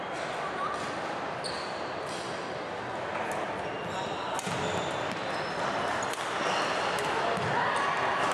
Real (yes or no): yes